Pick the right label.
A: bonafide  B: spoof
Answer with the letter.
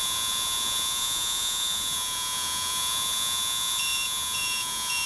B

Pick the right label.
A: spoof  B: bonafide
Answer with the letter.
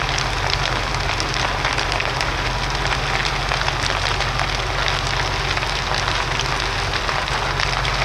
B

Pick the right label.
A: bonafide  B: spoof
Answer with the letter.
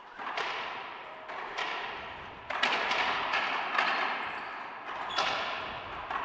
B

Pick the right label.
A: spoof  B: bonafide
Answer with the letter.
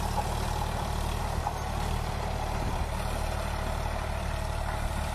B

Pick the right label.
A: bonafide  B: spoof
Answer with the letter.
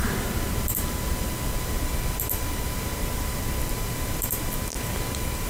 B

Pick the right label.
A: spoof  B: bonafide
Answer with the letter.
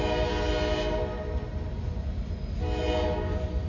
B